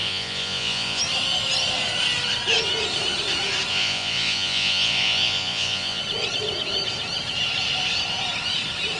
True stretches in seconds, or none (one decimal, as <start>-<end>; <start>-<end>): 1.0-3.7; 6.0-9.0

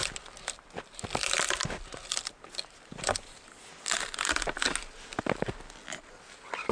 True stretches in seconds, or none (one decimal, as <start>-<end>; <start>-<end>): 0.0-6.7

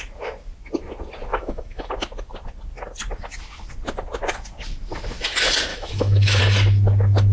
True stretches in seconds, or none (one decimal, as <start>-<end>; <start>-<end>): 0.0-1.3; 1.9-5.7; 6.4-7.3

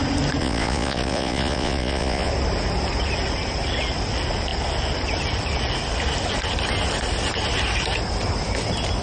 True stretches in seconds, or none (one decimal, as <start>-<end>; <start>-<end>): 0.0-0.4; 2.3-9.0

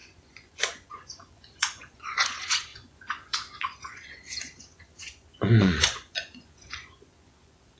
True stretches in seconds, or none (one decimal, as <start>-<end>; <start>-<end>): none

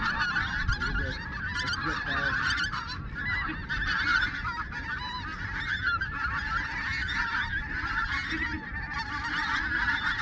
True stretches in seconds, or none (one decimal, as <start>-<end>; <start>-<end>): 0.0-10.2